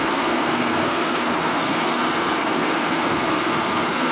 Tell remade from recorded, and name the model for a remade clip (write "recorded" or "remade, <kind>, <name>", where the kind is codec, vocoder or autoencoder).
remade, codec, SNAC